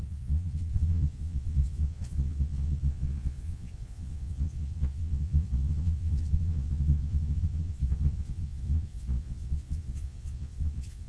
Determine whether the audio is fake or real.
fake